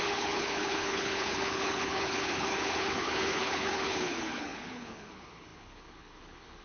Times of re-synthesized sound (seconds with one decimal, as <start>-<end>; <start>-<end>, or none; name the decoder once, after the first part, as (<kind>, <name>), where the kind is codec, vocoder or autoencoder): 0.0-6.6 (codec, HILCodec)